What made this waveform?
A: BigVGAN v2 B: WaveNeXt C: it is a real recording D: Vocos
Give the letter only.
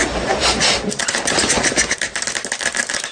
C